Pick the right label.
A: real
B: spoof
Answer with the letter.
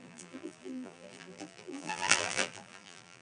B